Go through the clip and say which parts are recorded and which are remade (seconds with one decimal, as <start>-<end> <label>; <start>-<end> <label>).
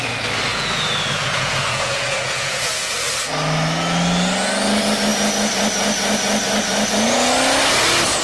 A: 0.0-0.5 recorded; 0.5-3.1 remade; 3.1-8.2 recorded